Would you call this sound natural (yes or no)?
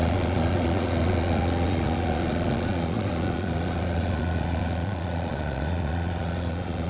no